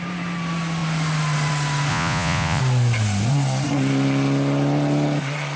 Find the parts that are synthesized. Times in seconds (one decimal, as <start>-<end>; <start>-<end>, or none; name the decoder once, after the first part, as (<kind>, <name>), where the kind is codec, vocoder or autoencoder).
1.9-2.6 (vocoder, Vocos)